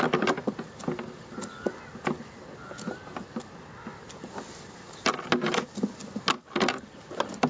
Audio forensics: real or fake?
real